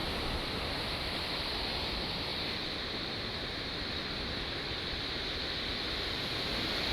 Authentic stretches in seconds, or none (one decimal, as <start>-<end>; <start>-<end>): 0.0-6.9